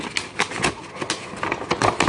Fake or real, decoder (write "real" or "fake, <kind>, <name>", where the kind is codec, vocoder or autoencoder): real